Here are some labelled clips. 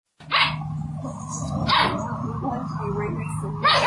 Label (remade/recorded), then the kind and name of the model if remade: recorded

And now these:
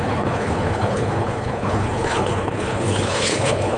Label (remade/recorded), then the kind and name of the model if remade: remade, codec, HILCodec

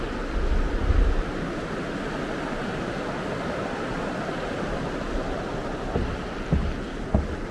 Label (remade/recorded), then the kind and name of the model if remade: recorded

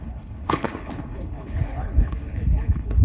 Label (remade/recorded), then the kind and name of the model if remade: remade, codec, HILCodec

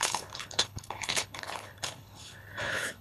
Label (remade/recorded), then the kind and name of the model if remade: remade, codec, HILCodec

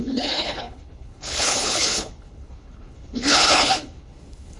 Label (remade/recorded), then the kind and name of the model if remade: remade, codec, HILCodec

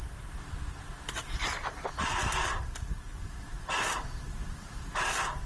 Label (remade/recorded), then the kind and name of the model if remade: recorded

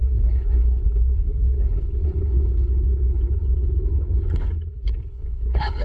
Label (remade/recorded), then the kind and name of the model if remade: remade, codec, HILCodec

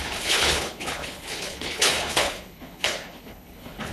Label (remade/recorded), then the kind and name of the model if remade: remade, codec, HILCodec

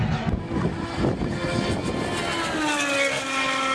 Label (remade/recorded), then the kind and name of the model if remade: recorded